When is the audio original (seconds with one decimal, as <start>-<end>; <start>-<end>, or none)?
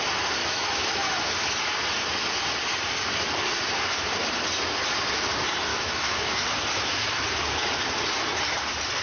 0.0-0.4; 1.1-5.7; 6.4-9.0